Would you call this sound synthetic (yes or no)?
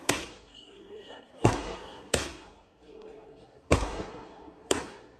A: yes